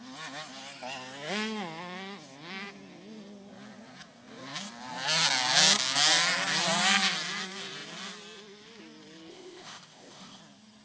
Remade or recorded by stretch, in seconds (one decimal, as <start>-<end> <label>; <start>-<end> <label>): 0.0-9.3 recorded; 9.3-10.4 remade; 10.4-10.8 recorded